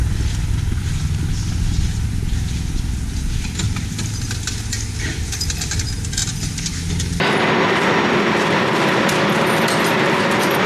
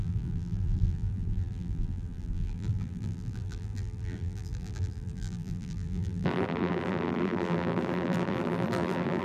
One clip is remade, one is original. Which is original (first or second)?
first